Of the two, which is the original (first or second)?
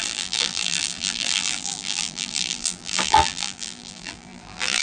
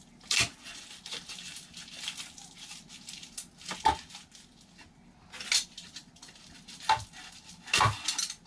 second